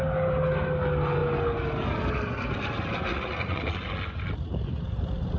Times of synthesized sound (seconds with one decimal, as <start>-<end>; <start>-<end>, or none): 3.1-3.6